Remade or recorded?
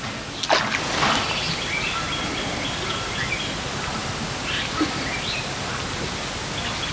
recorded